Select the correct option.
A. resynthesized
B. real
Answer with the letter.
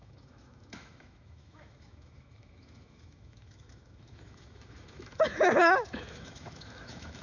A